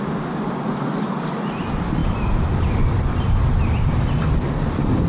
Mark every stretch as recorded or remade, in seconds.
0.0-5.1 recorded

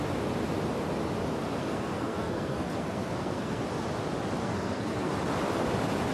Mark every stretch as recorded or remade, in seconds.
0.0-1.6 recorded; 1.6-3.6 remade; 3.6-4.4 recorded; 4.4-5.1 remade; 5.1-6.1 recorded

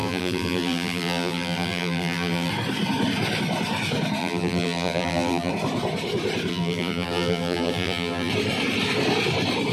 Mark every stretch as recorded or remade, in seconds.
0.0-2.5 remade; 2.5-4.2 recorded; 4.2-5.5 remade; 5.5-6.5 recorded; 6.5-8.3 remade; 8.3-9.7 recorded

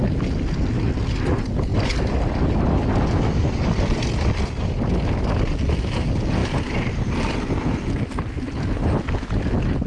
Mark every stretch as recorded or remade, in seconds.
0.0-9.9 recorded

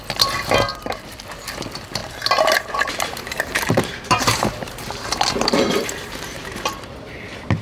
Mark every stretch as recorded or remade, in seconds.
0.0-0.7 recorded; 0.7-1.2 remade; 1.2-2.0 recorded; 2.0-6.5 remade; 6.5-7.6 recorded

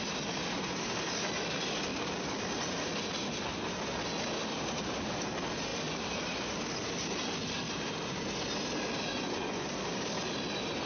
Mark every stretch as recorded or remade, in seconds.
0.0-9.1 recorded; 9.1-9.7 remade; 9.7-10.9 recorded

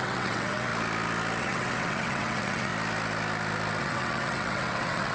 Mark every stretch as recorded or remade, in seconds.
0.0-0.7 remade; 0.7-1.4 recorded; 1.4-2.7 remade; 2.7-3.8 recorded; 3.8-5.1 remade

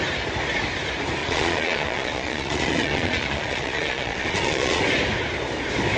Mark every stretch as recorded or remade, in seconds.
0.0-1.2 recorded; 1.2-4.8 remade; 4.8-6.0 recorded